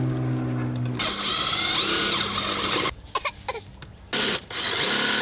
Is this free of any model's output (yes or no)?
yes